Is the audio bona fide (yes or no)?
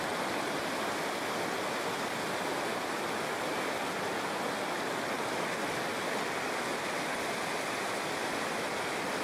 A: yes